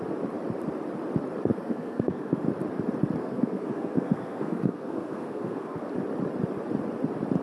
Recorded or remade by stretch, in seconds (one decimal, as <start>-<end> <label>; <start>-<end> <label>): 0.0-1.5 recorded; 1.5-2.4 remade; 2.4-3.2 recorded; 3.2-5.9 remade; 5.9-7.4 recorded